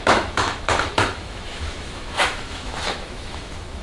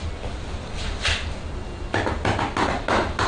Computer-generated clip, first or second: first